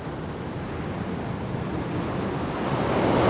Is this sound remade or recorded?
recorded